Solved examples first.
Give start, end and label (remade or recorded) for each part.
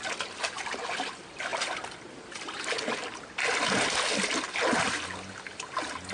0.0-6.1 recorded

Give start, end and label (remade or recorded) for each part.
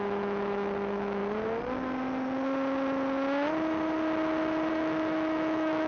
0.0-1.2 remade; 1.2-4.7 recorded; 4.7-5.9 remade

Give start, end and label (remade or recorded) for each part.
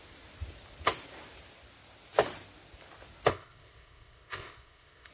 0.0-3.3 recorded; 3.3-5.1 remade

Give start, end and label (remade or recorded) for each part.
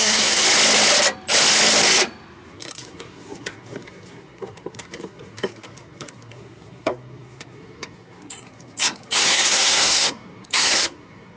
0.0-0.4 remade; 0.4-2.5 recorded; 2.5-11.4 remade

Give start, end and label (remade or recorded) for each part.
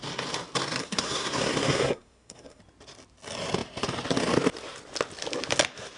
0.0-0.8 recorded; 0.8-2.6 remade; 2.6-6.0 recorded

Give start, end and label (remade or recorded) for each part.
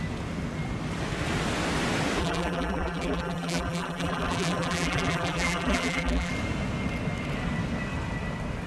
0.0-2.2 recorded; 2.2-6.3 remade; 6.3-8.7 recorded